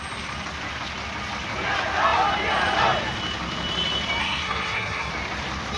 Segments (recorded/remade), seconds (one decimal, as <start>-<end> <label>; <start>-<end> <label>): 0.0-4.2 recorded; 4.2-5.1 remade; 5.1-5.8 recorded